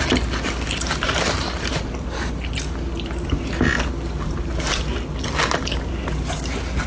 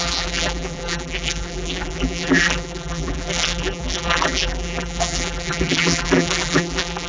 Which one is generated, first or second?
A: second